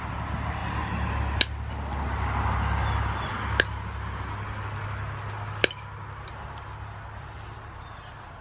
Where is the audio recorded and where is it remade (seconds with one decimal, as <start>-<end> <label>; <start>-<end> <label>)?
0.0-8.4 recorded